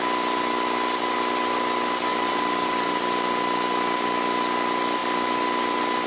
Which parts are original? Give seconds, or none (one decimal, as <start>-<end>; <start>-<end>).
0.0-2.1; 3.0-6.1